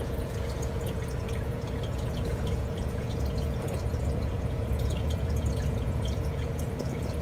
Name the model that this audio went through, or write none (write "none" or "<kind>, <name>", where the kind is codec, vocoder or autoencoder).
vocoder, Vocos